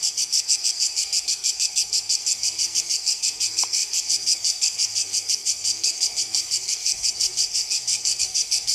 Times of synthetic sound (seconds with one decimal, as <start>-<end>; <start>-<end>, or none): 0.0-8.7